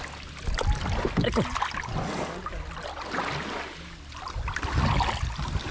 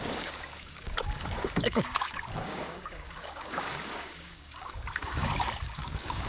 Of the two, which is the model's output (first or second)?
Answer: second